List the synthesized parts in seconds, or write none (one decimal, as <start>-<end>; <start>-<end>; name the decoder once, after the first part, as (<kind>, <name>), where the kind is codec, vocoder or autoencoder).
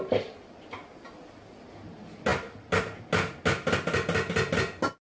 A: none